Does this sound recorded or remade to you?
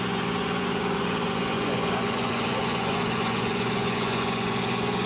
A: remade